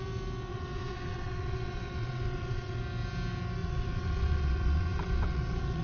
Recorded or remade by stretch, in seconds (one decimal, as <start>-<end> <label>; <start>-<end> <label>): 0.0-0.5 recorded; 0.5-2.8 remade; 2.8-3.6 recorded; 3.6-5.8 remade